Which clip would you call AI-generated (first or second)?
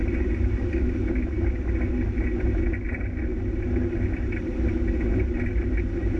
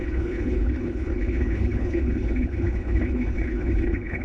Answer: second